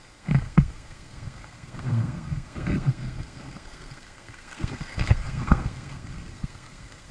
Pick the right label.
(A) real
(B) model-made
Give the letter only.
B